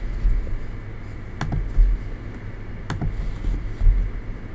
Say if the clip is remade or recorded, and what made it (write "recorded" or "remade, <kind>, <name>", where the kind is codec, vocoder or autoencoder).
recorded